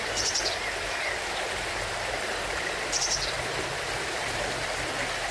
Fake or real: fake